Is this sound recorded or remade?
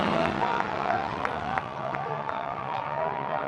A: remade